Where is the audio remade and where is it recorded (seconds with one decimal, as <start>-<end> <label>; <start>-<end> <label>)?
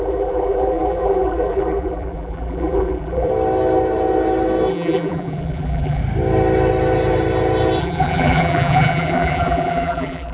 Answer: 0.0-3.3 remade; 3.3-4.7 recorded; 4.7-6.0 remade; 6.0-7.8 recorded; 7.8-10.3 remade